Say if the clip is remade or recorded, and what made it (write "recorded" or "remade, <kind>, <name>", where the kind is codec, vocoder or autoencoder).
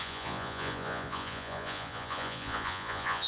remade, vocoder, Vocos